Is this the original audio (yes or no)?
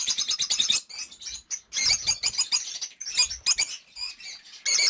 yes